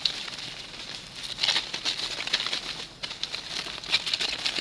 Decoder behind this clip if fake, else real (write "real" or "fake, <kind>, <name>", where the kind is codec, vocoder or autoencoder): real